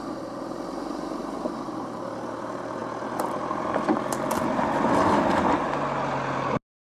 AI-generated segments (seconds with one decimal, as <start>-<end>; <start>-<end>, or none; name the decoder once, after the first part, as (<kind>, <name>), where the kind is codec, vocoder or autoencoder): 0.0-2.8 (vocoder, BigVGAN v2)